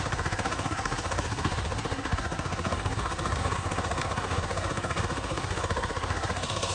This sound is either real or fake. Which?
fake